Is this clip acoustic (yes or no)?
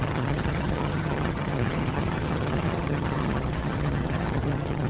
no